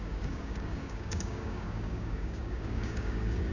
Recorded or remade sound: remade